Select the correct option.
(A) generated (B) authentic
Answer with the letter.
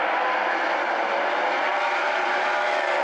A